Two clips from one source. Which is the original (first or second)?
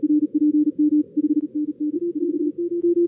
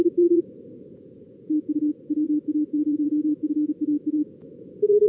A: first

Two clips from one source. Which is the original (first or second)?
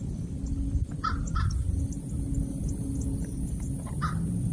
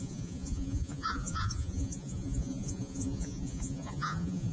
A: first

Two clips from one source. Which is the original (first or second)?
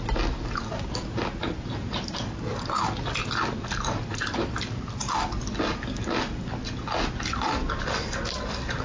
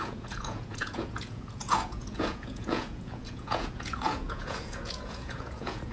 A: first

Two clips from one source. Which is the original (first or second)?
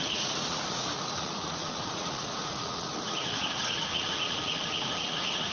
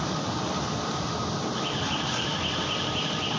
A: second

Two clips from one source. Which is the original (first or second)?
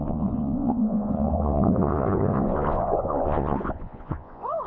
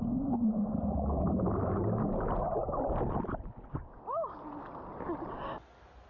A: second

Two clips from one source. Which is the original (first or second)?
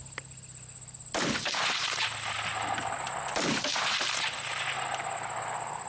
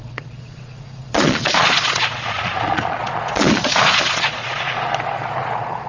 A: first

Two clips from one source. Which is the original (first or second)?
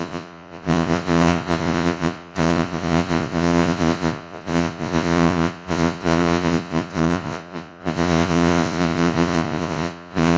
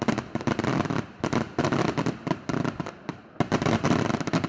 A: second